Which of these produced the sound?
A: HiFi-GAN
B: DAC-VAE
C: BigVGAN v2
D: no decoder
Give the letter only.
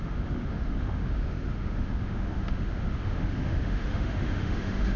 B